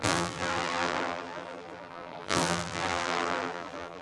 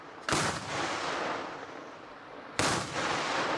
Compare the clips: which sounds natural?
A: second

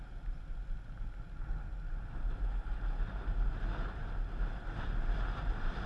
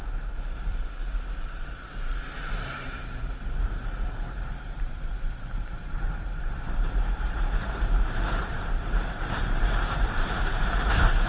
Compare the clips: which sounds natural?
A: first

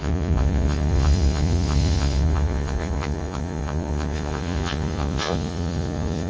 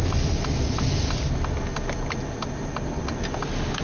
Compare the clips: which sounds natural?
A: second